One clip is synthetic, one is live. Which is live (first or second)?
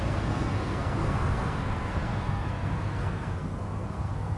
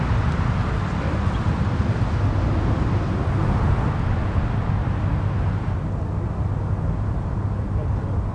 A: second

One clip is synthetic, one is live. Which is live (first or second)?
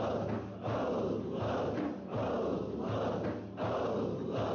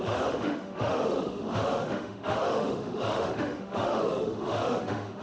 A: first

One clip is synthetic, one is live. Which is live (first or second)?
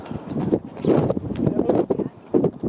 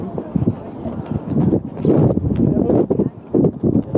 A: second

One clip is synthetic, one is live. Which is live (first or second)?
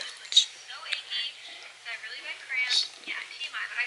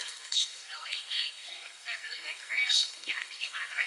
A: first